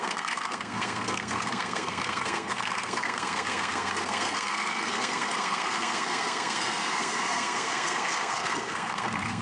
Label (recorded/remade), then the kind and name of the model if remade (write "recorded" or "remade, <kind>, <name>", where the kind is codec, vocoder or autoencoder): remade, codec, SNAC